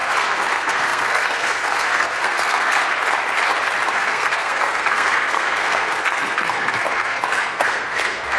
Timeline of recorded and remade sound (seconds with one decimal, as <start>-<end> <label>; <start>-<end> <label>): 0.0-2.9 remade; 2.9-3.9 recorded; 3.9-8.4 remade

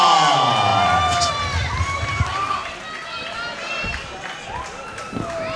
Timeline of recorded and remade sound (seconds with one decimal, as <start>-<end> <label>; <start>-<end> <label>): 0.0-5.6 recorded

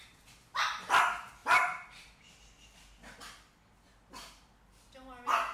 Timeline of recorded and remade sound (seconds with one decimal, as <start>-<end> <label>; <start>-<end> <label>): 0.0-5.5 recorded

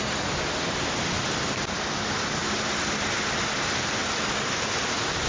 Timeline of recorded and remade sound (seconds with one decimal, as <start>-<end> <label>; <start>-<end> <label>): 0.0-5.3 recorded

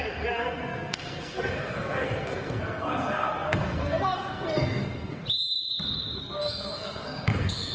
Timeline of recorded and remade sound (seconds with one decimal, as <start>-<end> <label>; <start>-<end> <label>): 0.0-5.2 remade; 5.2-6.2 recorded; 6.2-7.7 remade

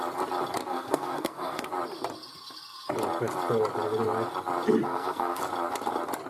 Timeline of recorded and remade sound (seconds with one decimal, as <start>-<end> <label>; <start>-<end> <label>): 0.0-0.7 recorded; 0.7-1.7 remade; 1.7-4.8 recorded; 4.8-5.4 remade; 5.4-6.3 recorded

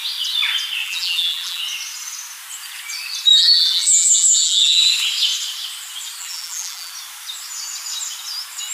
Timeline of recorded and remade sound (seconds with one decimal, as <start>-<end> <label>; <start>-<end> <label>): 0.0-0.8 recorded; 0.8-1.6 remade; 1.6-3.3 recorded; 3.3-4.9 remade; 4.9-6.2 recorded; 6.2-6.9 remade; 6.9-8.7 recorded